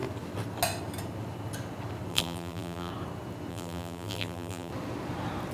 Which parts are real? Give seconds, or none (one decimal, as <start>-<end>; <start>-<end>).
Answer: 0.0-2.1; 2.9-3.5; 4.7-5.5